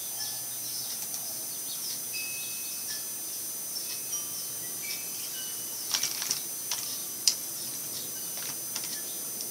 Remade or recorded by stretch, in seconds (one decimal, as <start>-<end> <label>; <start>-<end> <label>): 0.0-4.8 recorded; 4.8-6.3 remade; 6.3-7.0 recorded; 7.0-8.2 remade; 8.2-9.5 recorded